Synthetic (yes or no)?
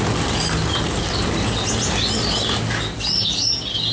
no